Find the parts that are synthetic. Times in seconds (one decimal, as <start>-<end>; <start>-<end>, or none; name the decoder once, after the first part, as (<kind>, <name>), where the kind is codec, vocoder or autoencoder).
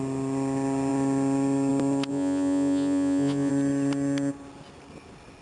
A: 2.1-3.5 (vocoder, Vocos)